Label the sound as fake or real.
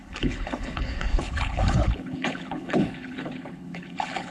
fake